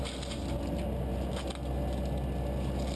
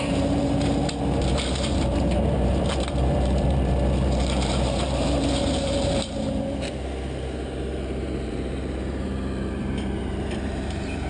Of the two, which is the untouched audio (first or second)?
first